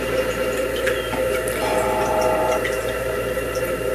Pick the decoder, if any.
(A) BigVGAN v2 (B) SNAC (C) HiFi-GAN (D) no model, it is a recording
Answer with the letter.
D